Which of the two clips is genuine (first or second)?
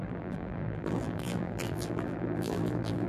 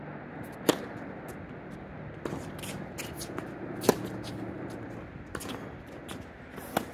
second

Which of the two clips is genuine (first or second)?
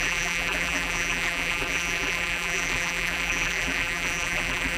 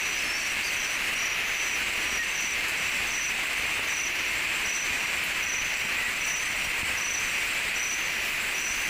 second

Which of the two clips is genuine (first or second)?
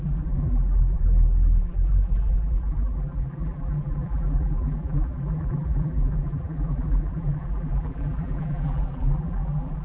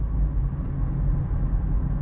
second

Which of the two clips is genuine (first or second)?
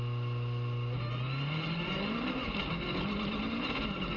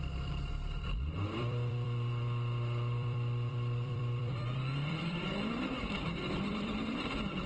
first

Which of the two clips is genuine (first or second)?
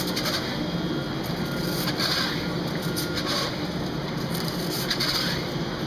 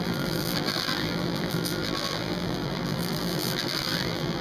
first